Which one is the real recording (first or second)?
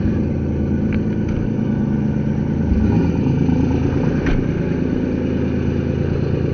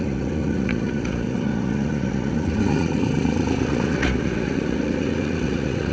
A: first